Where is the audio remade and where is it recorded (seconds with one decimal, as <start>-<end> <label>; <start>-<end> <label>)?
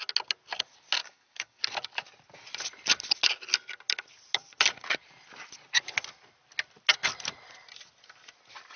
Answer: 0.0-1.0 recorded; 1.0-1.6 remade; 1.6-8.8 recorded